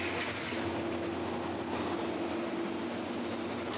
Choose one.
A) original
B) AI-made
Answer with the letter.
A